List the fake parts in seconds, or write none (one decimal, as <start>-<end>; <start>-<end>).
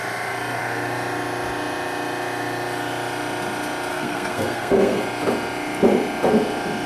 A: 3.9-5.0